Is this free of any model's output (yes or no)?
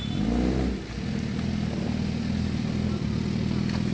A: yes